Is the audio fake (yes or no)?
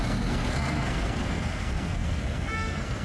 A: yes